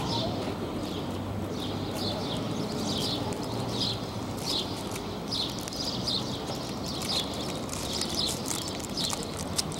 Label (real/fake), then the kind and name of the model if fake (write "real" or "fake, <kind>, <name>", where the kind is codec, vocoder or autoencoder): real